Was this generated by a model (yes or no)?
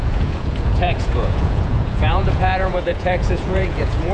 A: yes